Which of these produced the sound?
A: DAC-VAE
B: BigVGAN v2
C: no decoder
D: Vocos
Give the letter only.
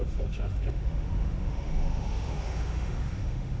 A